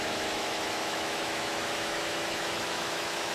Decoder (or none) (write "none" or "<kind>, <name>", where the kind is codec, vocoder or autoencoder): autoencoder, DAC-VAE